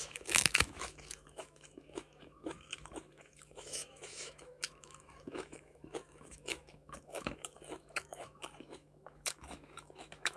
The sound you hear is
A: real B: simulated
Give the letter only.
B